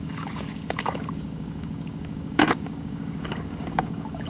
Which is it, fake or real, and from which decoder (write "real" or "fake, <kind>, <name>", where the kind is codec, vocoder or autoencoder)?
fake, codec, DAC